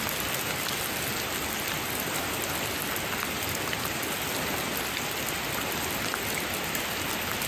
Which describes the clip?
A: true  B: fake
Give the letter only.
A